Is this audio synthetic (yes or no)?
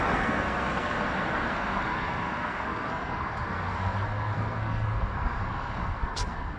yes